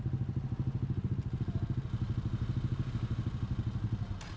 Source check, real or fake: real